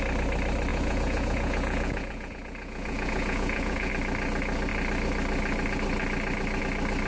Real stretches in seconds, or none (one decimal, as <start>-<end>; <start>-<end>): 0.0-0.7; 3.9-7.1